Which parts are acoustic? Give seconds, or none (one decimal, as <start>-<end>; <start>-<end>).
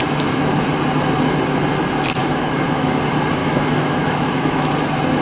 0.0-2.2; 3.0-3.4; 4.7-5.2